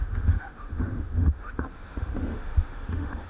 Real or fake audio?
fake